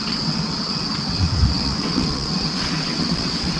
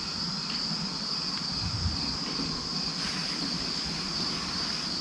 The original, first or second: second